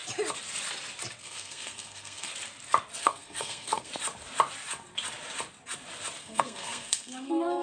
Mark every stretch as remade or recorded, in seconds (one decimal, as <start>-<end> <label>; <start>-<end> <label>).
0.0-1.2 recorded; 1.2-2.3 remade; 2.3-3.0 recorded; 3.0-3.9 remade; 3.9-6.2 recorded; 6.2-7.6 remade